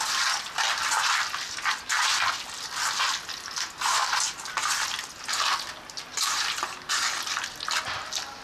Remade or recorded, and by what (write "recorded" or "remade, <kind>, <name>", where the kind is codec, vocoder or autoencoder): recorded